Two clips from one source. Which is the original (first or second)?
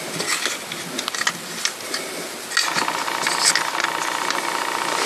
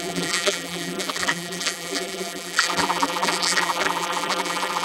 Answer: first